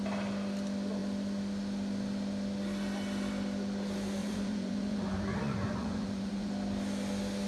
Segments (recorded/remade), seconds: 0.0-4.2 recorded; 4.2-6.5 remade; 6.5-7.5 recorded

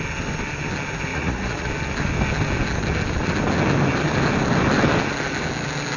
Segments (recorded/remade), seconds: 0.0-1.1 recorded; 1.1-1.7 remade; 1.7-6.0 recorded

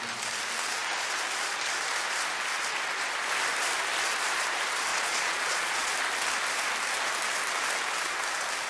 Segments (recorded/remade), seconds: 0.0-4.9 recorded; 4.9-5.9 remade; 5.9-8.7 recorded